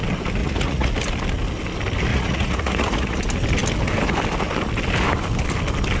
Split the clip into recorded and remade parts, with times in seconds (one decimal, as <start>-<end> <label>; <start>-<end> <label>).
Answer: 0.0-0.4 recorded; 0.4-0.9 remade; 0.9-2.1 recorded; 2.1-3.2 remade; 3.2-6.0 recorded